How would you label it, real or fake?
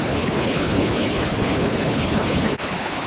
fake